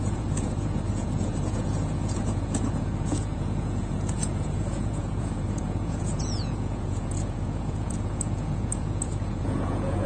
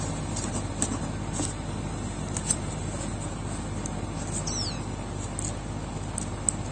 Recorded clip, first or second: second